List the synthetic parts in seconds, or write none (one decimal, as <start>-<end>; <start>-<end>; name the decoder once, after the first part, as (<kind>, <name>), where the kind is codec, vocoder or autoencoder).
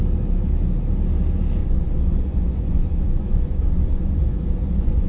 1.6-5.1 (vocoder, Vocos)